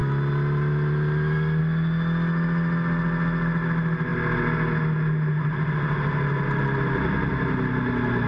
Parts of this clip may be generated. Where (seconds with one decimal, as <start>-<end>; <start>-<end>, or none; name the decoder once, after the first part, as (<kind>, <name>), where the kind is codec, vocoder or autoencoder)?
none